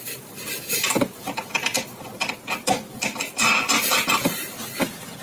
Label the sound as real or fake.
real